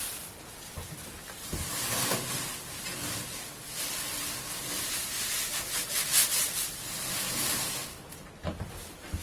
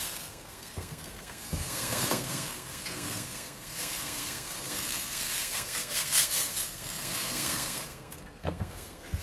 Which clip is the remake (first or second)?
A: second